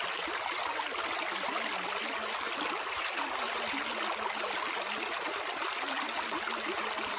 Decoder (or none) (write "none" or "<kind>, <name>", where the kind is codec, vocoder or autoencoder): none